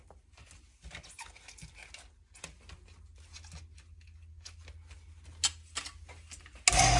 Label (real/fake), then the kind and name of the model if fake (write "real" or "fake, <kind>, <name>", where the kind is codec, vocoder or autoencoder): real